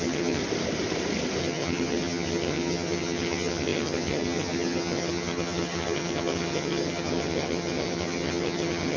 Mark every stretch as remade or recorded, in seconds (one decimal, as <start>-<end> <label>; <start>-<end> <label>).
0.0-0.4 remade; 0.4-1.4 recorded; 1.4-9.0 remade